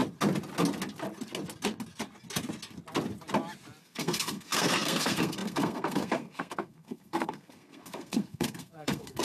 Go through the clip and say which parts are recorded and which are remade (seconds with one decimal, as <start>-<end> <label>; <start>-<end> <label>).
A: 0.0-3.8 recorded; 3.8-9.2 remade